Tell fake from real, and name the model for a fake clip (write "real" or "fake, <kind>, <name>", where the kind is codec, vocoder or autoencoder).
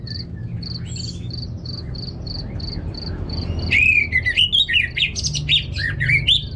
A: real